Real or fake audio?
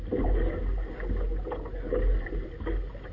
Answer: real